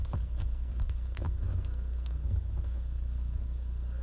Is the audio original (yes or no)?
no